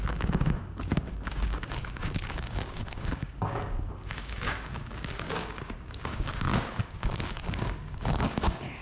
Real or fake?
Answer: fake